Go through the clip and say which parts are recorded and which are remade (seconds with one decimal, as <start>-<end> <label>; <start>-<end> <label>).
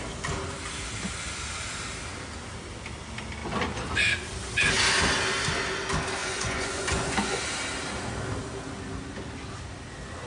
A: 0.0-6.2 recorded; 6.2-7.4 remade; 7.4-10.3 recorded